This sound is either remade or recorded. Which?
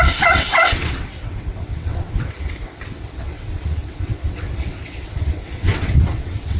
remade